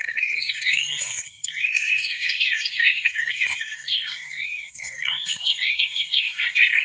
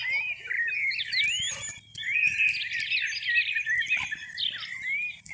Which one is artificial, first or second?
first